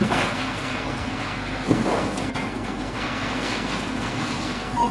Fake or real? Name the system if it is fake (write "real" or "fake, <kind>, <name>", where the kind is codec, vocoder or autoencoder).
fake, codec, SNAC